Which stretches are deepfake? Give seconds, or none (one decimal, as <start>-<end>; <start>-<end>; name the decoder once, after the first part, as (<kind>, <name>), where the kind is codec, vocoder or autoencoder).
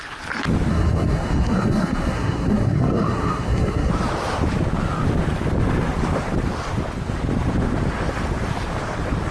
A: 0.7-3.9 (codec, SNAC)